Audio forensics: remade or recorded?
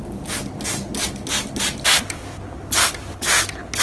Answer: recorded